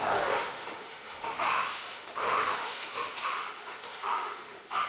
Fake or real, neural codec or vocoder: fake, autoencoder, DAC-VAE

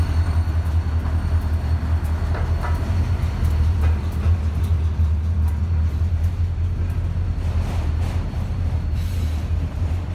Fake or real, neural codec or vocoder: real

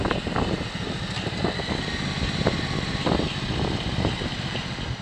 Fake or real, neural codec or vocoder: real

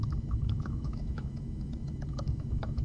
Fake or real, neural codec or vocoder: fake, autoencoder, DAC-VAE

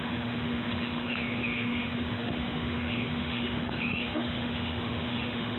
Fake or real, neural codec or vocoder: fake, autoencoder, DAC-VAE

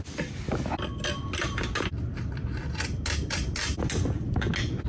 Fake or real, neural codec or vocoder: real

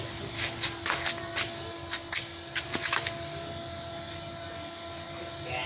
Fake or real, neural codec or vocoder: real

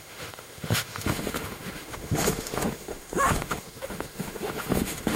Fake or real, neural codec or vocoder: fake, autoencoder, DAC-VAE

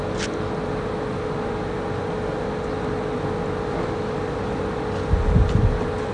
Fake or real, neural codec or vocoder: real